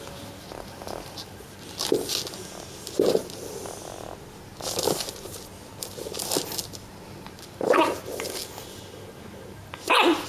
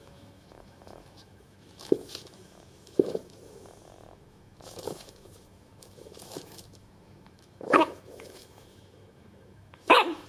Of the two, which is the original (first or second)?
first